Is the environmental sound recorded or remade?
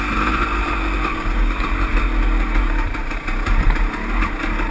recorded